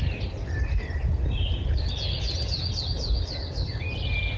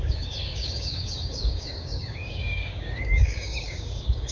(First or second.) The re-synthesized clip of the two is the second